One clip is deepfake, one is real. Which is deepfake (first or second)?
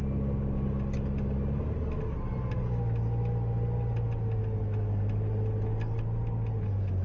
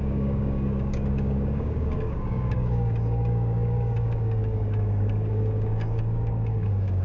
second